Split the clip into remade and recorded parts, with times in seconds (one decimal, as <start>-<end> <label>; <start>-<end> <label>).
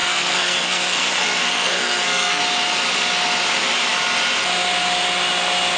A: 0.0-2.4 remade; 2.4-5.8 recorded